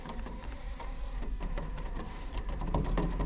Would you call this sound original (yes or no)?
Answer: no